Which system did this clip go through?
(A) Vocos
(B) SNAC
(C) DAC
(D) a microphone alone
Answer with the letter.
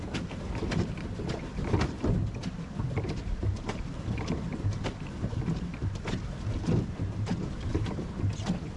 D